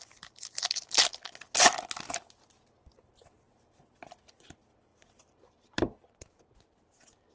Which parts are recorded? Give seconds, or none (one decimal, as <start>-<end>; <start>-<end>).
0.0-4.9; 5.8-7.3